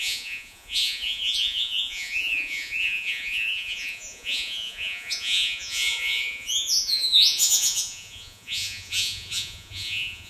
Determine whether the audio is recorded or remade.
remade